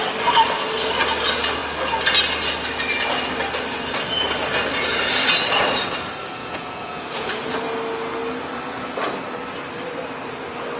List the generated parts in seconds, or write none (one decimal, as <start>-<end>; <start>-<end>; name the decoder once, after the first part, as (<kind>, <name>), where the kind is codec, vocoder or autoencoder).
6.4-7.3 (vocoder, Vocos)